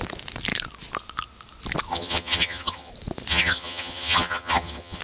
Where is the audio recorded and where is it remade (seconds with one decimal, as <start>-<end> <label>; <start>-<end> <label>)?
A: 0.0-1.9 recorded; 1.9-2.9 remade; 2.9-3.3 recorded; 3.3-5.0 remade